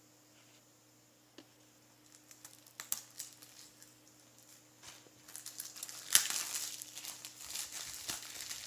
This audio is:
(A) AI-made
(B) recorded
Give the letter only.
B